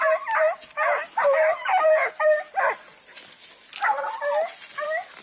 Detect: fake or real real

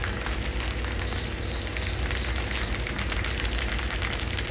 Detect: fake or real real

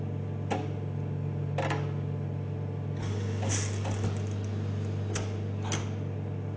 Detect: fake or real real